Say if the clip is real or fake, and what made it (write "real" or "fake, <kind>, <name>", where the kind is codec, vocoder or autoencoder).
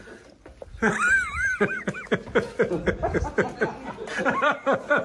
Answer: fake, vocoder, BigVGAN v2